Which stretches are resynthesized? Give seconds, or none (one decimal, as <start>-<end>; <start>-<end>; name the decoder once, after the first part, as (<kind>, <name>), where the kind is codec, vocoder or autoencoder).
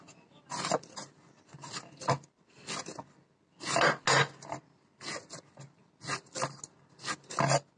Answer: none